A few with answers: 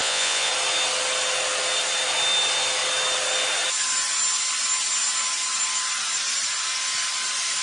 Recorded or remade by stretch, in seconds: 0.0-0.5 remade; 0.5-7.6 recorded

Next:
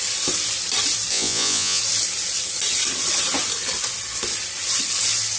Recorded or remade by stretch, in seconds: 0.0-1.1 recorded; 1.1-1.8 remade; 1.8-5.4 recorded

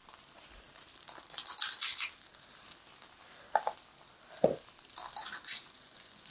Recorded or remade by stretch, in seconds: 0.0-5.2 recorded; 5.2-6.3 remade

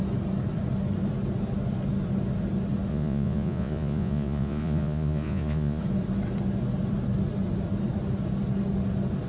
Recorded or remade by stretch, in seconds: 0.0-2.9 recorded; 2.9-5.8 remade; 5.8-9.3 recorded

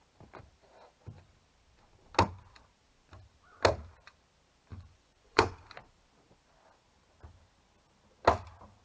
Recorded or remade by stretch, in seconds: 0.0-4.7 recorded; 4.7-5.6 remade; 5.6-8.8 recorded